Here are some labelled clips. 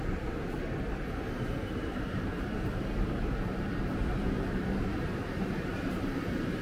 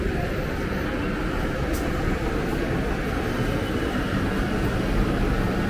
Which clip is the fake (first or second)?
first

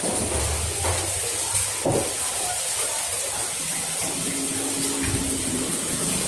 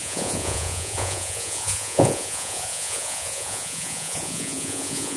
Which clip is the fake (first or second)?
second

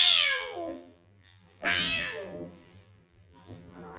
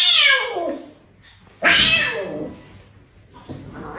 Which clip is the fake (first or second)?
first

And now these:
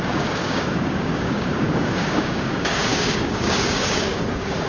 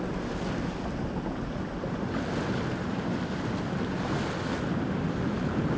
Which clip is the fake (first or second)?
first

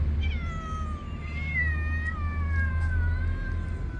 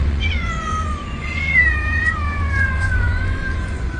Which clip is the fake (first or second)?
second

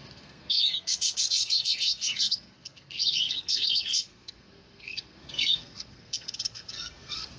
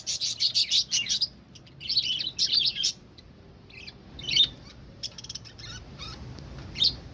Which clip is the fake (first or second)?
first